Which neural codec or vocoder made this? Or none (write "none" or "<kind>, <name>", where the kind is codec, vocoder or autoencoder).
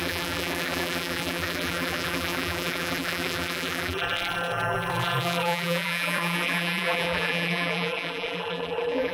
vocoder, BigVGAN v2